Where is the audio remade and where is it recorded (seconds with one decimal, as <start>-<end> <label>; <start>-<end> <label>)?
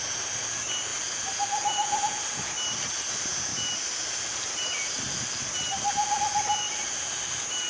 0.0-7.7 recorded